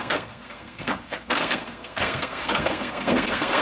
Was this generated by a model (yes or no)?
yes